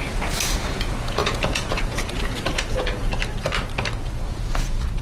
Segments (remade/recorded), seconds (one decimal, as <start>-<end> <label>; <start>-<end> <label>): 0.0-3.1 remade; 3.1-4.3 recorded; 4.3-5.0 remade